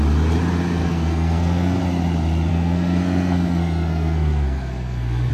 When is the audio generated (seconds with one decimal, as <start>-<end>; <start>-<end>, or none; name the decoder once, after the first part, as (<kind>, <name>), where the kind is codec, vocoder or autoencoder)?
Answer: 0.8-1.8 (codec, SNAC); 2.5-5.3